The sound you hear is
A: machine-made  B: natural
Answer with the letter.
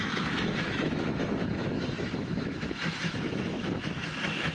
A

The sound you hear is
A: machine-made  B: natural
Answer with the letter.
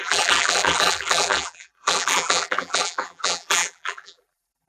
A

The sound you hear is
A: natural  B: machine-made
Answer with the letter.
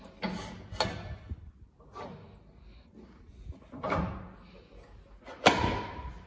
A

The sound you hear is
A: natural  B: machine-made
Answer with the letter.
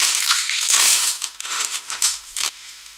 B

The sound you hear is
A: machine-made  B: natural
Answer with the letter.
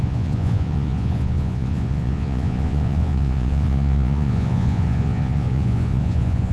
A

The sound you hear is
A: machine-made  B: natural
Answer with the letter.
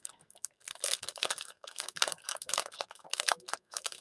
A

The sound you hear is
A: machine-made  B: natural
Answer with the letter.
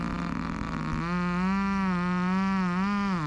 B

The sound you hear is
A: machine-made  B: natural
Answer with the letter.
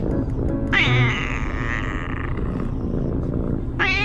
B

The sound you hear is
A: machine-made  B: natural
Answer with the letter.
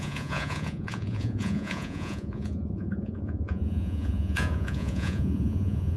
A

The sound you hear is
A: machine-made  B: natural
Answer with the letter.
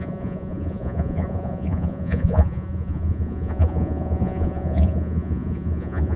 A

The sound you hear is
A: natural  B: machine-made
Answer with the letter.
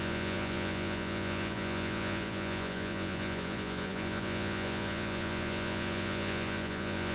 B